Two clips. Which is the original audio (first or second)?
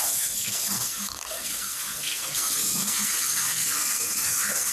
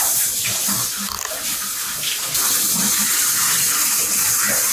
second